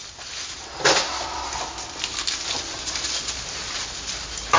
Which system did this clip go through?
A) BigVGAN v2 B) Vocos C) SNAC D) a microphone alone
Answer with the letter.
D